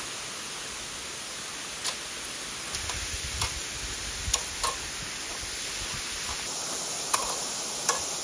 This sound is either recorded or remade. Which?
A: recorded